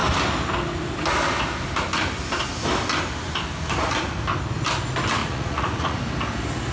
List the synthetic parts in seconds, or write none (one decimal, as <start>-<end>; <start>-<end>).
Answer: 5.2-6.0